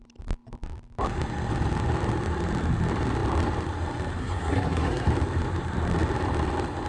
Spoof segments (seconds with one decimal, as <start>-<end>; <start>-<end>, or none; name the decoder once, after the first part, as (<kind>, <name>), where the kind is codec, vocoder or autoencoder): 4.2-5.1 (codec, SNAC)